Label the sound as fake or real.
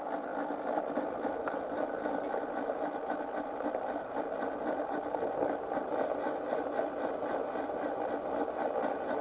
real